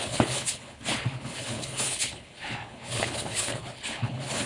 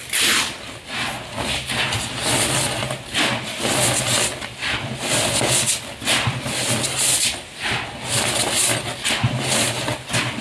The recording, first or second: second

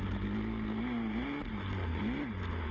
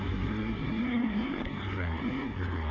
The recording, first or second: first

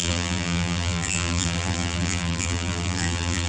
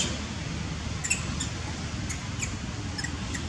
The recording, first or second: second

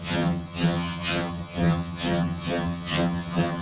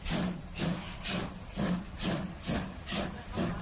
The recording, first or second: second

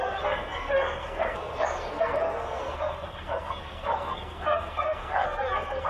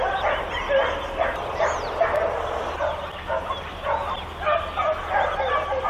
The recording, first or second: second